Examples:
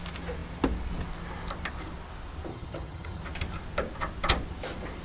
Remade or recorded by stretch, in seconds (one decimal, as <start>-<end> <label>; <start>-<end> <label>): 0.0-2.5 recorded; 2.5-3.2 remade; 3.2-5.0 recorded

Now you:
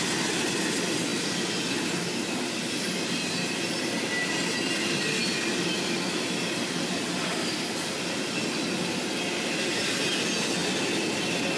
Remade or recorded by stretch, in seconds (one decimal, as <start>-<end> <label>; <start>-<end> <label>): 0.0-11.6 recorded

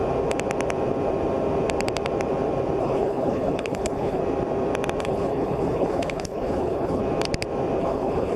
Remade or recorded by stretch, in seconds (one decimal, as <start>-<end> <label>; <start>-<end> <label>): 0.0-2.8 recorded; 2.8-4.2 remade; 4.2-5.0 recorded; 5.0-7.0 remade; 7.0-7.8 recorded; 7.8-8.4 remade

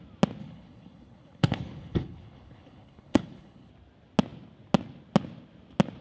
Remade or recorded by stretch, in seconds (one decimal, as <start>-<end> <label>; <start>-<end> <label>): 0.0-0.4 recorded; 0.4-3.7 remade; 3.7-6.0 recorded

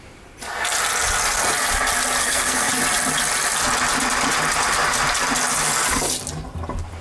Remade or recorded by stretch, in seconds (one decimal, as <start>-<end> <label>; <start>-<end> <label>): 0.0-2.2 recorded; 2.2-2.8 remade; 2.8-7.0 recorded